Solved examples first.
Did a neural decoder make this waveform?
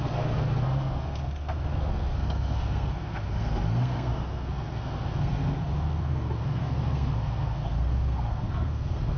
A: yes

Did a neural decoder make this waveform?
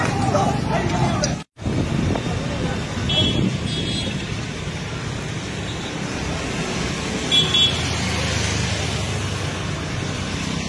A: no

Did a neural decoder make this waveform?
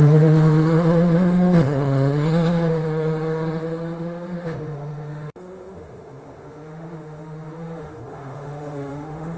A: yes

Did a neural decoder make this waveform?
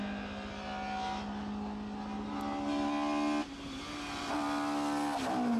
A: no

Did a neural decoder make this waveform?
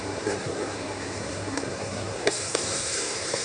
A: yes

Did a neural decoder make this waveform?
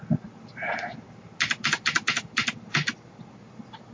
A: no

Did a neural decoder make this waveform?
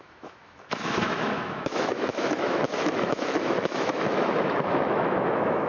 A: yes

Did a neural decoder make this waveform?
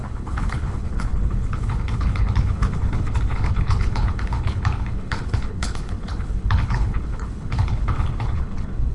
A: yes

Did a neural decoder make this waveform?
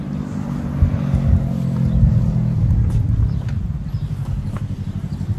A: yes